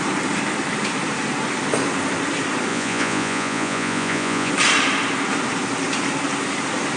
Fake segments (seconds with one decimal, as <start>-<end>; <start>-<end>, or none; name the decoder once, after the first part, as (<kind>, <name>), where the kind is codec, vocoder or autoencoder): 2.7-4.5 (vocoder, Vocos)